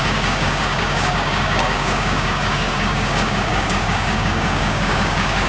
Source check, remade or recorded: remade